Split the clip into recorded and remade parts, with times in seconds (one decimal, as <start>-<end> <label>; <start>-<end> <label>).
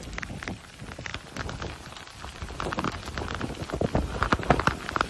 0.0-5.1 recorded